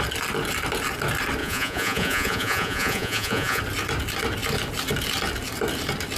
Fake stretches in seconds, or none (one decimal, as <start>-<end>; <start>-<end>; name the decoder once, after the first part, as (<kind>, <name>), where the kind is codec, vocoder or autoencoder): 1.4-3.6 (vocoder, Vocos)